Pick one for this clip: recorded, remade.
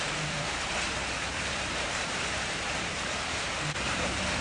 remade